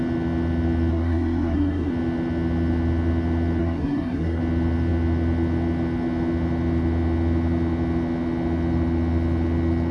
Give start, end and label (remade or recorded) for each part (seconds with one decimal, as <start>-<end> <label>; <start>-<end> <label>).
0.0-0.9 recorded; 0.9-1.9 remade; 1.9-3.6 recorded; 3.6-4.4 remade; 4.4-9.9 recorded